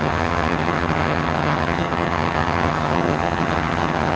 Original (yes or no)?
no